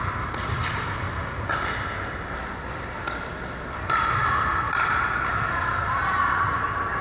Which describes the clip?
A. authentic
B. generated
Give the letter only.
A